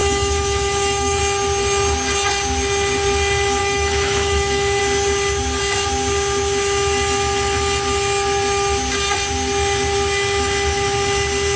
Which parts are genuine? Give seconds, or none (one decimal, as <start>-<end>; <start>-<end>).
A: 1.2-3.6; 4.8-11.6